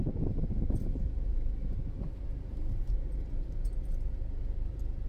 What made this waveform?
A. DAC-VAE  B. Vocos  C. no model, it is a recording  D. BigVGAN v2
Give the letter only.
C